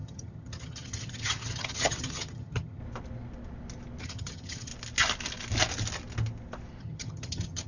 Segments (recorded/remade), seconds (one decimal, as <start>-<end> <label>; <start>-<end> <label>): 0.0-2.8 remade; 2.8-4.0 recorded; 4.0-4.7 remade; 4.7-6.8 recorded; 6.8-7.7 remade